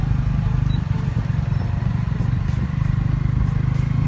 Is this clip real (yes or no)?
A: yes